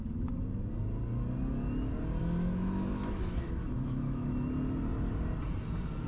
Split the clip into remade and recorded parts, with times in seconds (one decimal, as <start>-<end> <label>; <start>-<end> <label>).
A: 0.0-2.2 recorded; 2.2-4.3 remade; 4.3-6.1 recorded